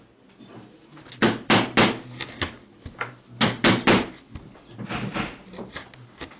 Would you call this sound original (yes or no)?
yes